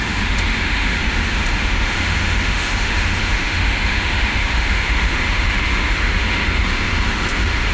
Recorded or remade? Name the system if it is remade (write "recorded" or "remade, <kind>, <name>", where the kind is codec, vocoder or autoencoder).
remade, autoencoder, DAC-VAE